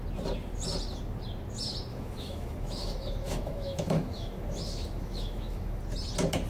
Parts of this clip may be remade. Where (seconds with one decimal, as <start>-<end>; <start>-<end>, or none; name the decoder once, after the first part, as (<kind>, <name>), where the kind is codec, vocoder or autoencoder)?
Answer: 1.9-5.8 (autoencoder, DAC-VAE)